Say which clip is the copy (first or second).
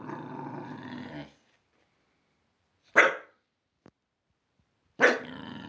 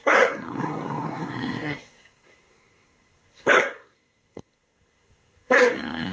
second